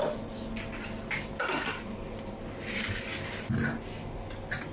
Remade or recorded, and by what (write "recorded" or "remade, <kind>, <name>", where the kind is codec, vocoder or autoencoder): recorded